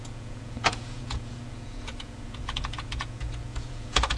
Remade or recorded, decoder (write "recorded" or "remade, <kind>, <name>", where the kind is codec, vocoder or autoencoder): remade, vocoder, Vocos